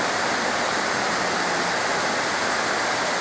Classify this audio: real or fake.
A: real